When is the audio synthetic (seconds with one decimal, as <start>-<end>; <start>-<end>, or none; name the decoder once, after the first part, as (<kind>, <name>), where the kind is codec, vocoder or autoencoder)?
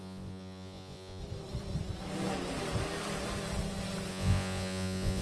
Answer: 0.0-1.2 (vocoder, Vocos); 4.1-5.2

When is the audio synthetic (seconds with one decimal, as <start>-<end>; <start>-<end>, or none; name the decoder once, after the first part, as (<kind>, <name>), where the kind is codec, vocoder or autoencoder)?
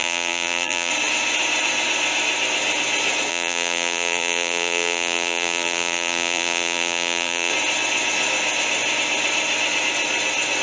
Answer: 0.0-0.9 (vocoder, BigVGAN v2); 3.3-7.5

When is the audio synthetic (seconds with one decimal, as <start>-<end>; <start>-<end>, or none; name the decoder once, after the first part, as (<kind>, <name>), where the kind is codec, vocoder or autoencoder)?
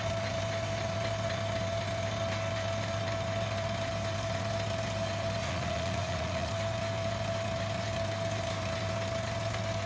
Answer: 5.4-6.5 (vocoder, Vocos)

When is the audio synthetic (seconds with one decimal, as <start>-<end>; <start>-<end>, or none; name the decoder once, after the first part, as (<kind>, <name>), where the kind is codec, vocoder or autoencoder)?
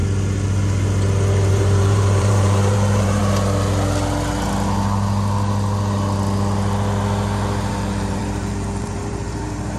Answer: 1.5-3.2 (vocoder, BigVGAN v2); 7.7-9.8